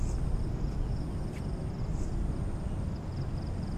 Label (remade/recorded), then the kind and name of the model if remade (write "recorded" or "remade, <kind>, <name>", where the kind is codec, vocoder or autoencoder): recorded